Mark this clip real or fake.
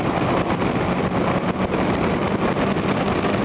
real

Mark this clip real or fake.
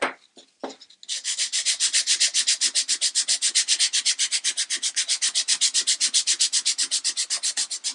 real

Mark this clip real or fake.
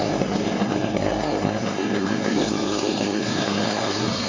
fake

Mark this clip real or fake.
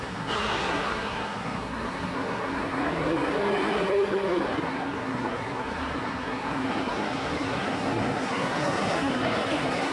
fake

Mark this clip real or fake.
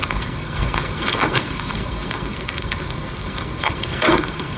fake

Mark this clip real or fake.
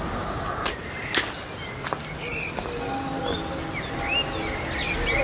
real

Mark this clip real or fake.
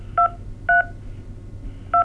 real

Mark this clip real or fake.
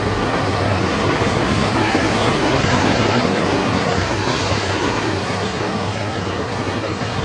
fake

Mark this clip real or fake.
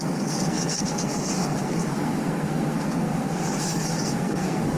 fake